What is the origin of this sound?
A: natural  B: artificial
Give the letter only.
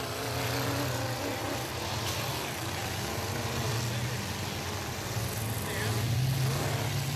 A